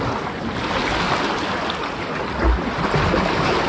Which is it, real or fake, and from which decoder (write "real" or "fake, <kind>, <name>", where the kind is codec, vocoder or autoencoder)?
real